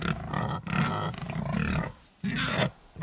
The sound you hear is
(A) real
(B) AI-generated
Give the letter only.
A